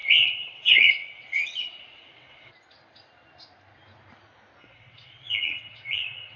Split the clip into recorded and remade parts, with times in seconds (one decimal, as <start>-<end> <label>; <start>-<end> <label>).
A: 0.0-2.5 remade; 2.5-4.6 recorded; 4.6-6.4 remade